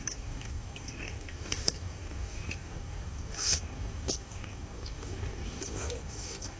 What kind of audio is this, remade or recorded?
remade